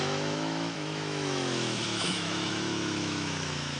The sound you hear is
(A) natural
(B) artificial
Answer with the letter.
B